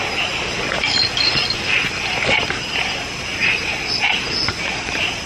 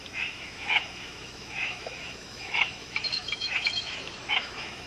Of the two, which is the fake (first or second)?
second